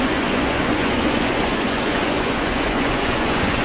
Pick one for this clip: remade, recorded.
remade